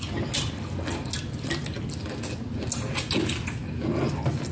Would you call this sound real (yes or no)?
yes